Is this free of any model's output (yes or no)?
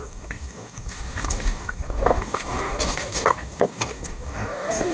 no